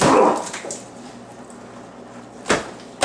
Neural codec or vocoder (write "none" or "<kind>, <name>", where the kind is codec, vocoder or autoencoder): none